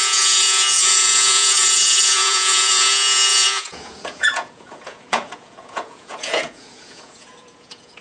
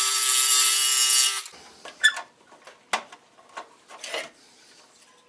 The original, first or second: second